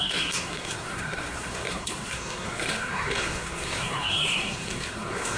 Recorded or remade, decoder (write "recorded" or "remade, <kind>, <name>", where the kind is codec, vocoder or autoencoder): remade, codec, SNAC